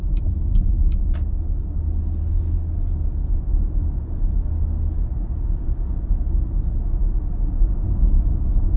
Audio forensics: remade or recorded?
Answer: recorded